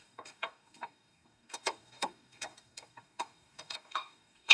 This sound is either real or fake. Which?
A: fake